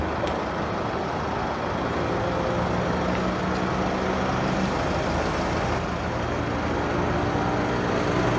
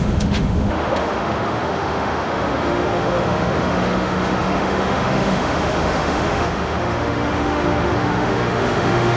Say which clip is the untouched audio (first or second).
first